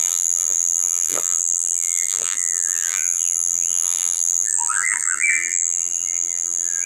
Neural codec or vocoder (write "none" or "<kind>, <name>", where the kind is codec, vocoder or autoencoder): vocoder, BigVGAN v2